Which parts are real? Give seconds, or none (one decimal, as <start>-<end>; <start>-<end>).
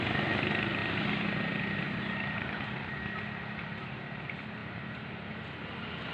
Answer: 0.0-0.8; 2.9-4.6; 5.3-6.1